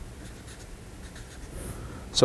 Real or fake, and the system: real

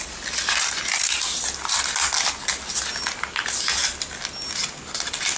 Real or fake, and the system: real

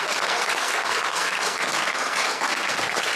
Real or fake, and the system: fake, codec, SNAC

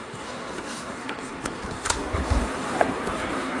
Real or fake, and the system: fake, codec, SNAC